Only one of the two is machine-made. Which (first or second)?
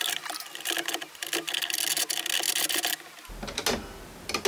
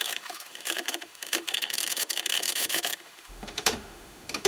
second